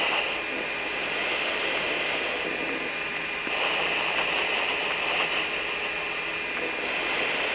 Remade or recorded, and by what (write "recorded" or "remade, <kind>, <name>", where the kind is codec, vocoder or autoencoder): recorded